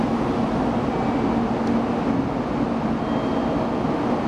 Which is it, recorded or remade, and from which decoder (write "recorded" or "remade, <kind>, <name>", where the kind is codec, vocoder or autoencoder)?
recorded